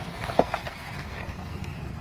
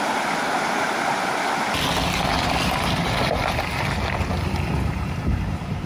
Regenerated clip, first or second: first